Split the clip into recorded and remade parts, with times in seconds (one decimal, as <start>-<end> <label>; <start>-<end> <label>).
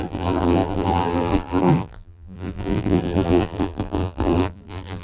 0.0-5.0 remade